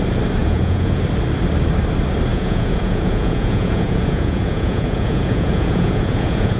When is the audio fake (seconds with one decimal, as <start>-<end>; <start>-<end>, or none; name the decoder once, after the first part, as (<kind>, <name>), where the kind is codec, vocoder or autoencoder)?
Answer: 0.4-1.0 (vocoder, Vocos); 2.3-6.6